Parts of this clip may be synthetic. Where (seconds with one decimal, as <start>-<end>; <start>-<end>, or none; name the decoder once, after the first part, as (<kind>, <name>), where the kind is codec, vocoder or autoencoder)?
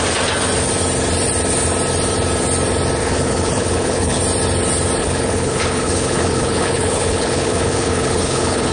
3.0-4.2 (codec, HILCodec); 5.0-8.7